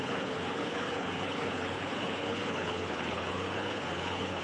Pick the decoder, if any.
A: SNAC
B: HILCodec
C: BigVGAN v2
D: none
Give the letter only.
B